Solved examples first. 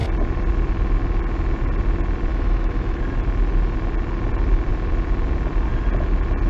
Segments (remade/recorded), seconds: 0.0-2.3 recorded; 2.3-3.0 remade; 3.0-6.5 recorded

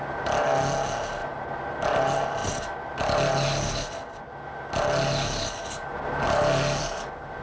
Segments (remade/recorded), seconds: 0.0-7.4 recorded

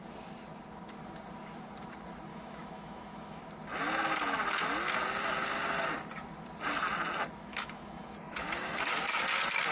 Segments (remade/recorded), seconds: 0.0-2.3 recorded; 2.3-3.4 remade; 3.4-7.5 recorded; 7.5-9.2 remade; 9.2-9.7 recorded

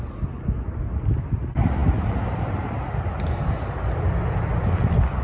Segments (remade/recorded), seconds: 0.0-5.2 recorded

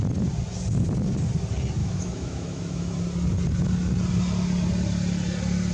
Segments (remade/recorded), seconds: 0.0-1.8 recorded; 1.8-3.0 remade; 3.0-5.7 recorded